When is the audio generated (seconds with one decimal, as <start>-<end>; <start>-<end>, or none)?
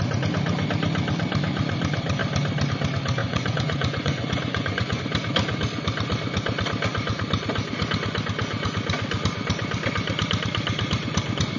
3.2-5.0